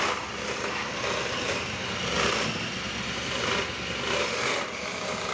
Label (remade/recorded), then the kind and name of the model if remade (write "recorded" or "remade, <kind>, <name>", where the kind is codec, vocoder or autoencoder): recorded